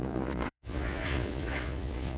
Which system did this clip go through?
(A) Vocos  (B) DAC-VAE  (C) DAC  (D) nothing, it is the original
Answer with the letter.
A